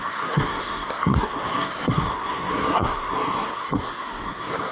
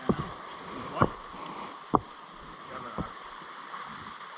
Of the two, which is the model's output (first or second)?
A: first